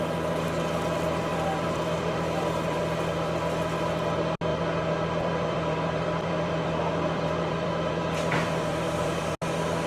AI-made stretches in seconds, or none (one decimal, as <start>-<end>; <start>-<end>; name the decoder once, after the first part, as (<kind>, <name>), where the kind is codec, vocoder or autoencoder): 1.3-2.8 (vocoder, BigVGAN v2); 4.5-9.2